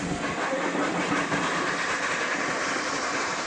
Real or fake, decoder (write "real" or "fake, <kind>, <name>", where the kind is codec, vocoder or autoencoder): real